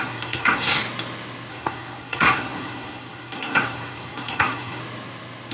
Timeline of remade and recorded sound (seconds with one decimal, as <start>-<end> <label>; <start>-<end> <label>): 0.0-0.8 remade; 0.8-1.5 recorded; 1.5-4.8 remade; 4.8-5.5 recorded